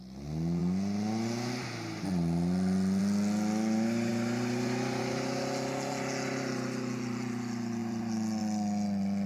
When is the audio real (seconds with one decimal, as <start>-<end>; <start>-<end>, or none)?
0.0-7.8; 8.4-9.3